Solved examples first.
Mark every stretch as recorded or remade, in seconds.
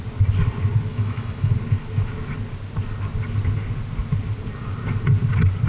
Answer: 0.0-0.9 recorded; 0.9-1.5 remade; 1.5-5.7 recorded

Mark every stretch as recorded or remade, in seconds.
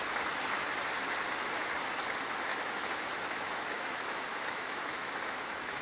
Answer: 0.0-2.5 recorded; 2.5-5.8 remade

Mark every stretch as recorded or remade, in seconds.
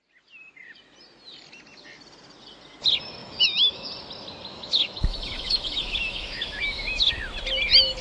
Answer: 0.0-3.2 recorded; 3.2-3.9 remade; 3.9-4.5 recorded; 4.5-7.1 remade; 7.1-8.0 recorded